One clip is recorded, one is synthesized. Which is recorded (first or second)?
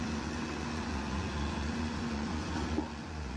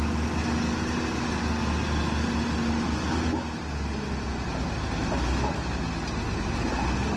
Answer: second